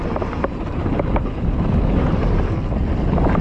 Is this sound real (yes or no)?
yes